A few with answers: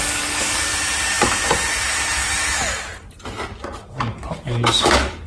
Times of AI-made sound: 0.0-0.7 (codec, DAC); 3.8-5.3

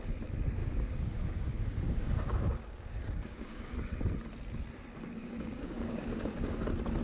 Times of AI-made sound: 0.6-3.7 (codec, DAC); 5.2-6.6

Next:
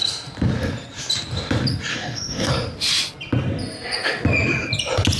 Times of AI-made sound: 1.9-2.5 (codec, DAC)

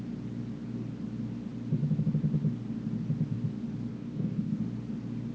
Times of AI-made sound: 3.9-4.6 (codec, DAC)

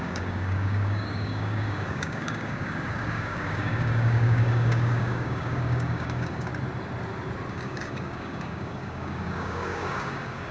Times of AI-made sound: 0.0-6.5 (codec, DAC); 7.5-10.5